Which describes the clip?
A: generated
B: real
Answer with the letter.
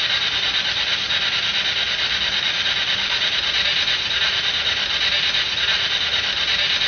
B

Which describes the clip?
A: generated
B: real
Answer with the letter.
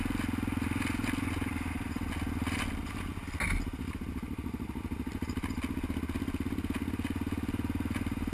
B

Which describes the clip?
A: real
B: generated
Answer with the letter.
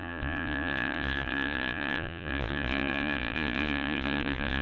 B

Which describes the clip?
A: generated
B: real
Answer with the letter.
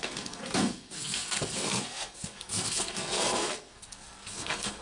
A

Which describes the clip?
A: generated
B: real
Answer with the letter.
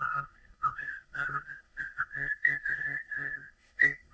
A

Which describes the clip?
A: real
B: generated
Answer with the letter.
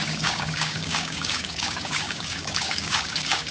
B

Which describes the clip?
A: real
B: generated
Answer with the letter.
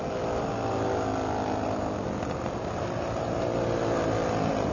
A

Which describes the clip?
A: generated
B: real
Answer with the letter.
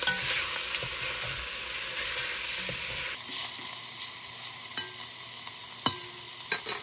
B